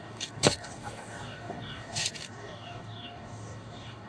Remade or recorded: remade